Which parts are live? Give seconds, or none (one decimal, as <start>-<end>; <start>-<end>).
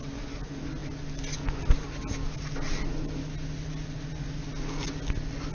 0.0-5.5